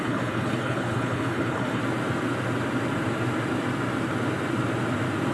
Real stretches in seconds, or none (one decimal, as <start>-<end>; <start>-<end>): 1.8-5.3